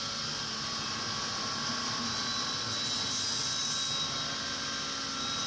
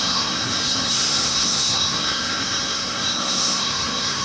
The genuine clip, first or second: first